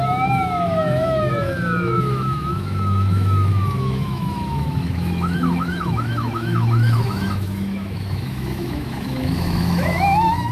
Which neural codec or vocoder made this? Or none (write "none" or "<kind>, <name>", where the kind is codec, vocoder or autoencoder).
autoencoder, DAC-VAE